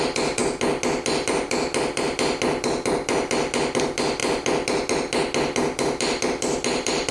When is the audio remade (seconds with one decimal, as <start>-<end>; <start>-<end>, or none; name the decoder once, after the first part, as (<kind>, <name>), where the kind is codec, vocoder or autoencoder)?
none